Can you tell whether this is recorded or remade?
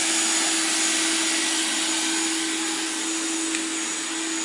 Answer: recorded